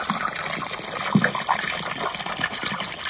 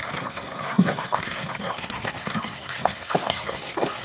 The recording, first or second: first